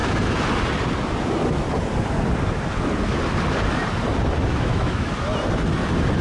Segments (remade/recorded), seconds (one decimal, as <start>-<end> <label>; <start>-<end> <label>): 0.0-0.5 remade; 0.5-4.5 recorded; 4.5-5.1 remade; 5.1-6.2 recorded